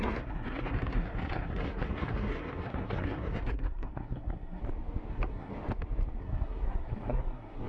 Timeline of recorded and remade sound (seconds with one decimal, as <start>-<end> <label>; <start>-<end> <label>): 0.0-4.6 remade; 4.6-5.1 recorded; 5.1-5.5 remade; 5.5-6.2 recorded; 6.2-7.7 remade